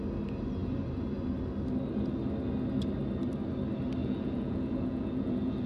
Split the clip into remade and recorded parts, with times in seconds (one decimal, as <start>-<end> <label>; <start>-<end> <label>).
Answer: 0.0-4.0 recorded; 4.0-5.7 remade